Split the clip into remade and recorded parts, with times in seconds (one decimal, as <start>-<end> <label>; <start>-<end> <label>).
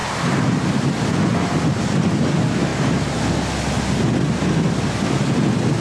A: 0.0-0.8 remade; 0.8-2.7 recorded; 2.7-3.3 remade; 3.3-5.8 recorded